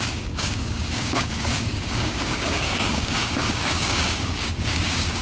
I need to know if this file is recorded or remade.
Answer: remade